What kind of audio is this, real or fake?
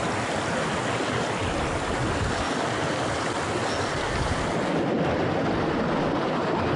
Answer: real